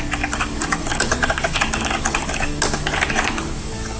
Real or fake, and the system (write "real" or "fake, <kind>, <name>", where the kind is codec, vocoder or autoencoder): fake, codec, DAC